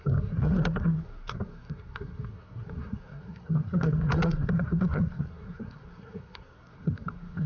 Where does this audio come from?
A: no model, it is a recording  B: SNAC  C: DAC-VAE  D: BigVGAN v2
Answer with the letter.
B